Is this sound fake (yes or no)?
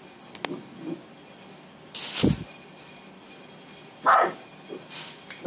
no